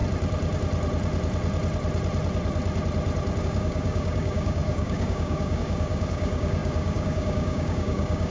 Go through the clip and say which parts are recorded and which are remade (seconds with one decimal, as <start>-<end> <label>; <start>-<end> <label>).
0.0-3.4 recorded; 3.4-8.3 remade